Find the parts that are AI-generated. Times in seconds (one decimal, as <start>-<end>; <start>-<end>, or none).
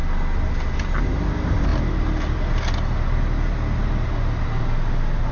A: none